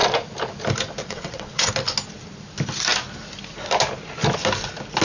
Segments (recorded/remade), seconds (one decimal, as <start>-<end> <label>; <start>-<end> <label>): 0.0-1.0 recorded; 1.0-1.7 remade; 1.7-5.0 recorded